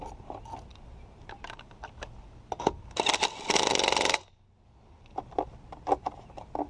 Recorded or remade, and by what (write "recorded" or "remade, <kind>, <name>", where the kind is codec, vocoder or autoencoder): recorded